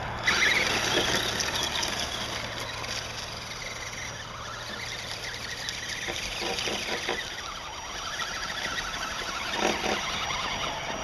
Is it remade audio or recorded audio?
recorded